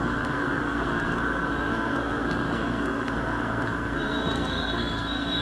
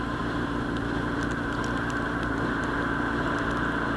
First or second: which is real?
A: second